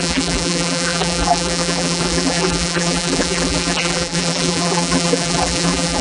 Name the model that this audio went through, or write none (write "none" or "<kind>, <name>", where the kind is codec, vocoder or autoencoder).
vocoder, BigVGAN v2